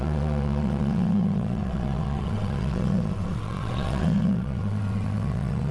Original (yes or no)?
no